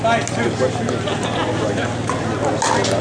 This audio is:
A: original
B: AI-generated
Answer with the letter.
A